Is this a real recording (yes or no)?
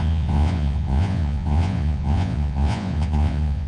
no